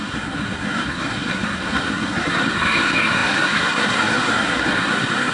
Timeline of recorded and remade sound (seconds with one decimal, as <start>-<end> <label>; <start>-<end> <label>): 0.0-5.3 remade